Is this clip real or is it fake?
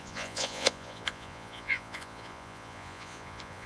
fake